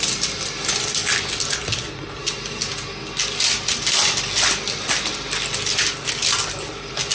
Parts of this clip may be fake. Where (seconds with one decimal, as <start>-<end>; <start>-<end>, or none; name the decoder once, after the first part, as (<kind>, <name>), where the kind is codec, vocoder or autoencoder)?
none